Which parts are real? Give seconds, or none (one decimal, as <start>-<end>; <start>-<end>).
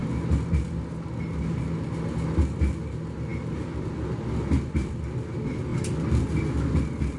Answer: 0.0-7.2